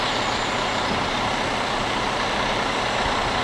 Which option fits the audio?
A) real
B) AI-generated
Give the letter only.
A